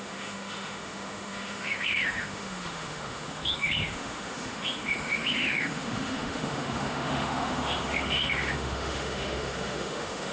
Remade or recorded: remade